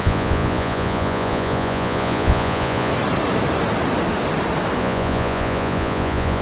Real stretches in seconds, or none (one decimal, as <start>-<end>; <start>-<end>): 2.9-4.8